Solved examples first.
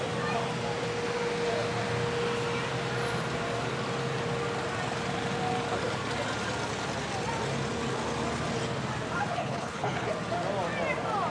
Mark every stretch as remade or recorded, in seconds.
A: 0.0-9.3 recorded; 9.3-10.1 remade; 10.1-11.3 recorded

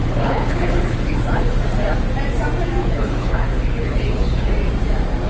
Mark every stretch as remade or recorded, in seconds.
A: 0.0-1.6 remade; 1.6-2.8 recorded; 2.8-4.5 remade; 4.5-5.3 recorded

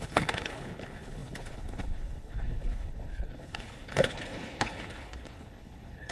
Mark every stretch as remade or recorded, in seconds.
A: 0.0-6.1 remade

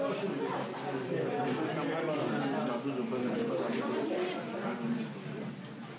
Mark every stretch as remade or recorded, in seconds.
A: 0.0-3.2 recorded; 3.2-3.8 remade; 3.8-6.0 recorded

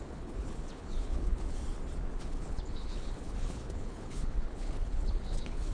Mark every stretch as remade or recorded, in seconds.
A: 0.0-1.6 remade; 1.6-2.2 recorded; 2.2-5.7 remade